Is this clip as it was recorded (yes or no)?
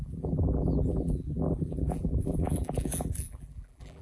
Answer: no